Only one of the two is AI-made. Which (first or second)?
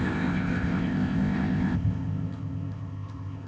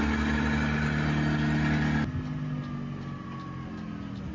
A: first